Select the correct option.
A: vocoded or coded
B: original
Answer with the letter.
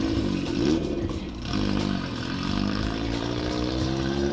A